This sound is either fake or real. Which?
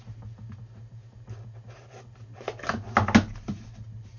real